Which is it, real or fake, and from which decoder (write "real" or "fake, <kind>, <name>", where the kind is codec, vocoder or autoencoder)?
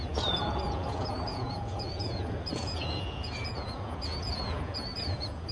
fake, vocoder, Vocos